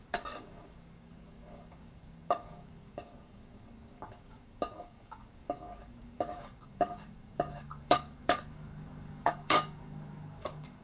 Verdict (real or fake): fake